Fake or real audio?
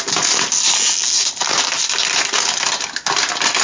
real